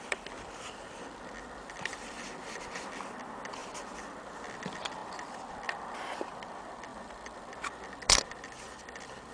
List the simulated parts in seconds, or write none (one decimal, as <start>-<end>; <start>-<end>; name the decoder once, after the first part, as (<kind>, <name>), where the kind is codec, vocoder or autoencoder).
6.9-7.4 (vocoder, BigVGAN v2)